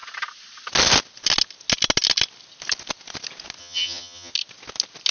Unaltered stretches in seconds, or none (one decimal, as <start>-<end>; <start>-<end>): 0.0-3.6; 4.3-5.1